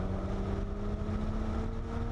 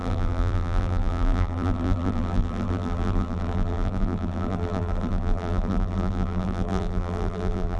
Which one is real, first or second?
first